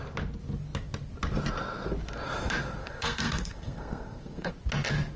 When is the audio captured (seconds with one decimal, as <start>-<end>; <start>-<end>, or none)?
0.0-2.8; 4.5-5.2